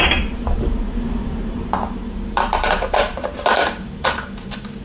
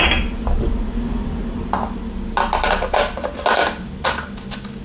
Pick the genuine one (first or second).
second